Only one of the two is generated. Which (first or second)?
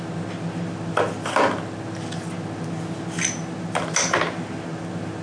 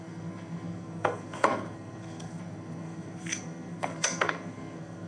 second